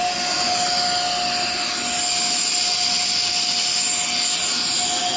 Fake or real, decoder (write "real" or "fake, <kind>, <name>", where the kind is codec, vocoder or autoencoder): real